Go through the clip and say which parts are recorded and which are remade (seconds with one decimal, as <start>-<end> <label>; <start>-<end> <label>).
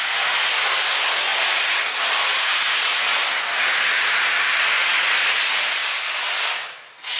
0.0-7.2 recorded